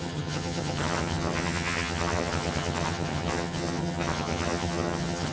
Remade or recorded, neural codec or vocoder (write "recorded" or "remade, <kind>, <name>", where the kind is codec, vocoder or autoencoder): remade, vocoder, HiFi-GAN